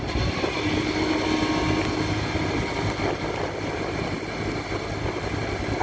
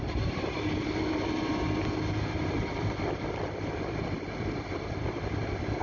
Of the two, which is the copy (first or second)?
second